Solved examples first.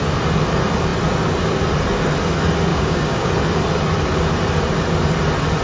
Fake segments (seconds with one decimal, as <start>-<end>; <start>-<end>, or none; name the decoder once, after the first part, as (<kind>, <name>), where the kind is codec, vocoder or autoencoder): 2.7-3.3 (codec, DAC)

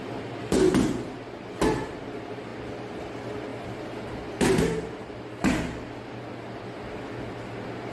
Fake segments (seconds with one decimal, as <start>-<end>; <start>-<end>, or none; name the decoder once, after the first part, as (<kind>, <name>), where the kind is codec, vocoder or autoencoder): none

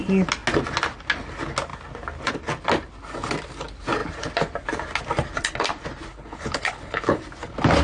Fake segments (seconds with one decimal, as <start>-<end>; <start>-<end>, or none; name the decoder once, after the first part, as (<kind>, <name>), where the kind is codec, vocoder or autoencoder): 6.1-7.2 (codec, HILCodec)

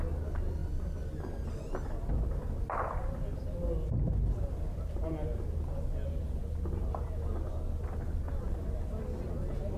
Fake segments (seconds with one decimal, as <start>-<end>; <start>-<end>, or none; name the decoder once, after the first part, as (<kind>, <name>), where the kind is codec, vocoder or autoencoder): none

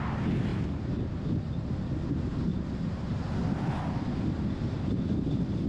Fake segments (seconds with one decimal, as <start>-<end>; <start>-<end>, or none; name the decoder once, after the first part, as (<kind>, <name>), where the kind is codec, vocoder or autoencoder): 0.5-1.1 (vocoder, BigVGAN v2); 2.5-3.3

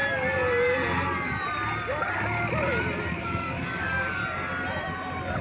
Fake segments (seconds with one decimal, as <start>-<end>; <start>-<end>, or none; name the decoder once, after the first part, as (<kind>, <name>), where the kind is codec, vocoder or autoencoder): 3.2-4.2 (codec, DAC)

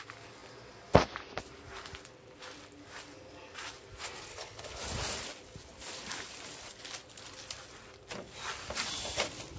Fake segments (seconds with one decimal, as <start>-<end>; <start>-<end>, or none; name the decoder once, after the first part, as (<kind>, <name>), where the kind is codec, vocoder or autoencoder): 4.3-4.8 (codec, HILCodec)

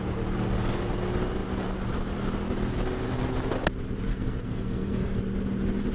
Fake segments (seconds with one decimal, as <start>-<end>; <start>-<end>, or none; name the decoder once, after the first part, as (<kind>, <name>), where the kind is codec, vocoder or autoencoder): 4.1-5.2 (codec, SNAC)